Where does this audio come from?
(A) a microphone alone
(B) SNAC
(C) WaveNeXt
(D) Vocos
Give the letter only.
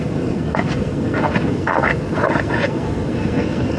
B